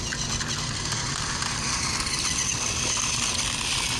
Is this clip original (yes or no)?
no